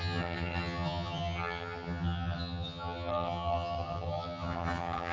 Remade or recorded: remade